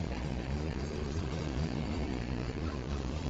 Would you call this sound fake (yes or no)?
yes